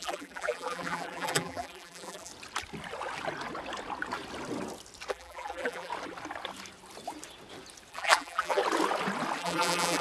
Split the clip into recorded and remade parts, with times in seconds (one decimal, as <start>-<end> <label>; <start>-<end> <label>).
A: 0.0-2.3 remade; 2.3-5.1 recorded; 5.1-5.9 remade; 5.9-7.9 recorded; 7.9-8.6 remade; 8.6-9.4 recorded; 9.4-10.0 remade